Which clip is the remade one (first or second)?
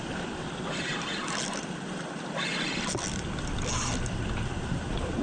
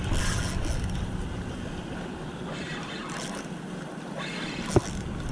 first